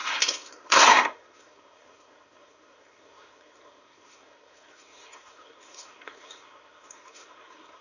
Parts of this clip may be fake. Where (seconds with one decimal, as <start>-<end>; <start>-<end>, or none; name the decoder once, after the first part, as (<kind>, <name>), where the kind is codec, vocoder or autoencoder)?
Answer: 0.0-7.8 (codec, SNAC)